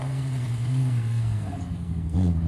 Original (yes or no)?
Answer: no